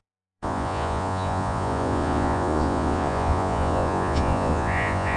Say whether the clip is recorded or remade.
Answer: remade